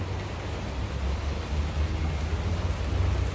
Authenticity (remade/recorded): recorded